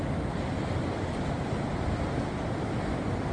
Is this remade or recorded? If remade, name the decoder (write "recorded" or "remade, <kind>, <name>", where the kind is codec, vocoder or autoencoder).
recorded